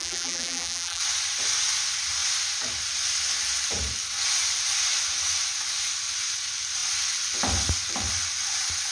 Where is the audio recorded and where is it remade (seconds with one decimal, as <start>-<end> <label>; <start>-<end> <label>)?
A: 0.0-1.0 remade; 1.0-8.9 recorded